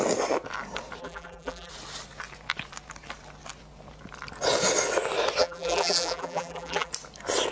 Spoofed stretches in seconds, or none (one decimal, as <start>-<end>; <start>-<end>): 1.0-1.7; 5.4-6.9